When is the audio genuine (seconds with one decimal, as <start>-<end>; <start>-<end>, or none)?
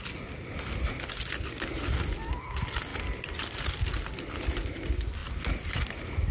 0.0-6.3